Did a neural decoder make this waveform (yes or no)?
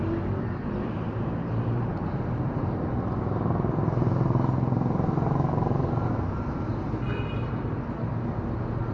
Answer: no